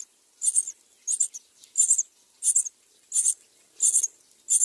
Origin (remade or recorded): recorded